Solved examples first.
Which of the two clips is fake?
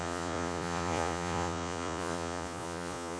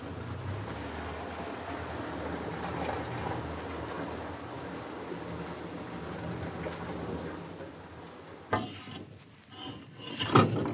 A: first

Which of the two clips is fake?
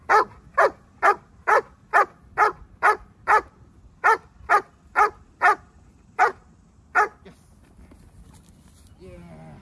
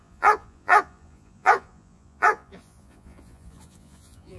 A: second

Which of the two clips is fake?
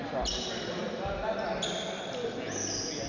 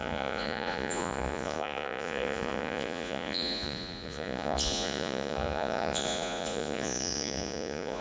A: second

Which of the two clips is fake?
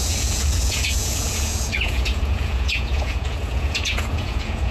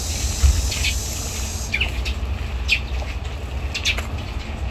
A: first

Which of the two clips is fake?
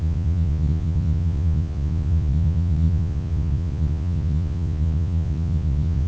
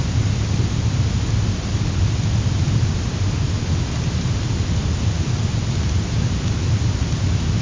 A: first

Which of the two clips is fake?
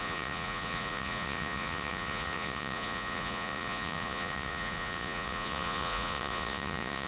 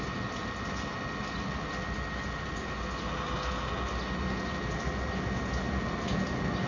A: first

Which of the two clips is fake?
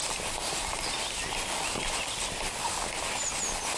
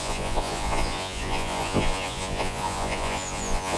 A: second